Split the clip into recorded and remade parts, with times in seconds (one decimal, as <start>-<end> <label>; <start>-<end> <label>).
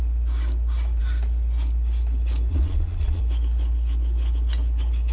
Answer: 0.0-2.5 recorded; 2.5-3.2 remade; 3.2-5.1 recorded